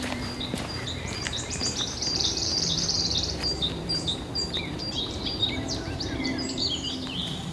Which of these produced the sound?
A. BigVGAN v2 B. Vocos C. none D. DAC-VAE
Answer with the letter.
A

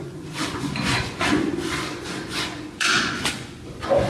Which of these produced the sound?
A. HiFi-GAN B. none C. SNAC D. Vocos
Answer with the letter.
D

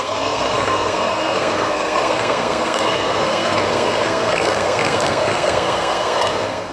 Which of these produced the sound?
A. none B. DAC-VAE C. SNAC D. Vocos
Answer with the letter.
C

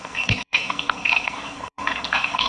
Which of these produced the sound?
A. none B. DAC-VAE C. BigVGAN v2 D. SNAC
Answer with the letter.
D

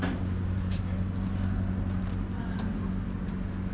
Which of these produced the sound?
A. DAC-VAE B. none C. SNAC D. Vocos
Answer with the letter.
B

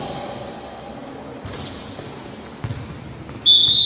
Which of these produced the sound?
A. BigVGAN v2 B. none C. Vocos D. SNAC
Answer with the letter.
B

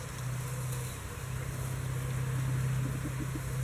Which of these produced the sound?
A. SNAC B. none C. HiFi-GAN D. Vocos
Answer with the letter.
B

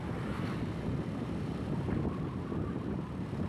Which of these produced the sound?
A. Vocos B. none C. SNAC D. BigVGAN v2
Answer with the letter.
B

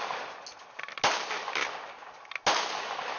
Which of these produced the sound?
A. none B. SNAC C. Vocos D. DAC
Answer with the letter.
A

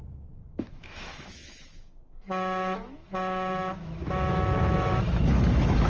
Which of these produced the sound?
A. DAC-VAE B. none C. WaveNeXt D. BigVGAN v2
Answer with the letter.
A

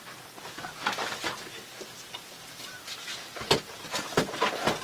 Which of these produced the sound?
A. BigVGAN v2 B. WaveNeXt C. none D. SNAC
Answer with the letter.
C